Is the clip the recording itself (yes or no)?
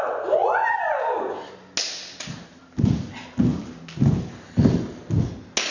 yes